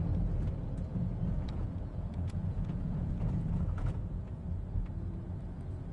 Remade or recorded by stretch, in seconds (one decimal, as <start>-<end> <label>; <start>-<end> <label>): 0.0-0.9 recorded; 0.9-4.4 remade; 4.4-5.9 recorded